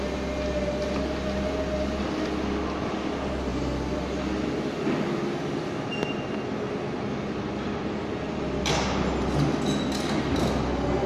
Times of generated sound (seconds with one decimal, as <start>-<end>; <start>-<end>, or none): none